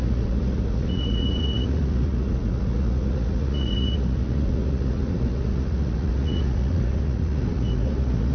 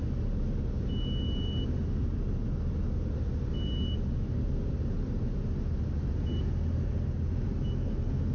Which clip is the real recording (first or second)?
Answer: second